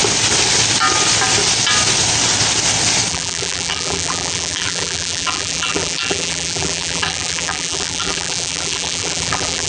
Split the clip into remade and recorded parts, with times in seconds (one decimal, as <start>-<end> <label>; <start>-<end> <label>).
0.0-3.1 recorded; 3.1-9.7 remade